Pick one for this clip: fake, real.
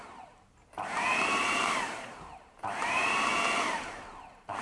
fake